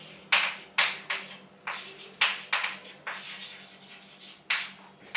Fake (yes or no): no